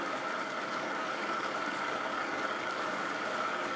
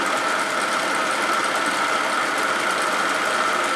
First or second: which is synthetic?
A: first